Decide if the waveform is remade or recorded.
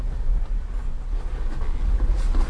recorded